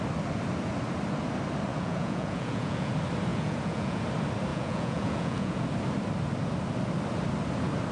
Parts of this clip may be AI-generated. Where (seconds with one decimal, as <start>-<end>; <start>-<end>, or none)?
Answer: 1.7-2.9; 3.3-4.0; 4.5-5.6